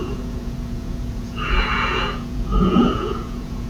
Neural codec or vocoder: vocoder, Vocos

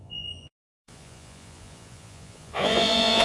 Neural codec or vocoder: vocoder, Vocos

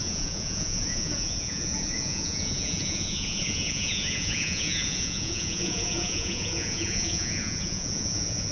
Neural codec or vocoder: vocoder, Vocos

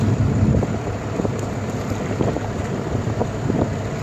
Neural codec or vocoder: none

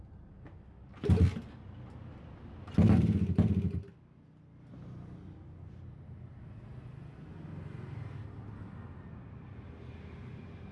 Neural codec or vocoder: none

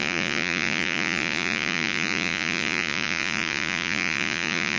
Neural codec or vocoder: vocoder, Vocos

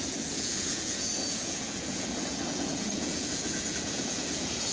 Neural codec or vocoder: vocoder, Vocos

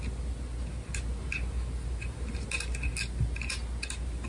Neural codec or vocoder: none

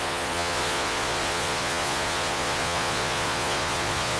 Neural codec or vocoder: vocoder, Vocos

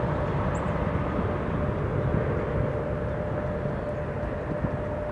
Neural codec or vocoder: none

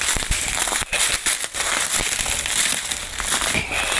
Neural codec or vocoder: none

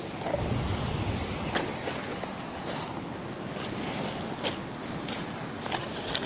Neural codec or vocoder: none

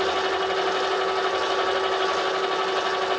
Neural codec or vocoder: none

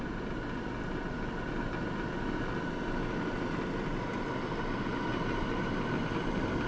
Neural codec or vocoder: none